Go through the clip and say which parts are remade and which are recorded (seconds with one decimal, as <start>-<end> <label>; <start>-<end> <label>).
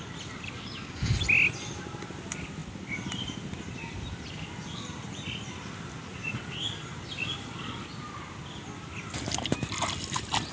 0.0-10.5 recorded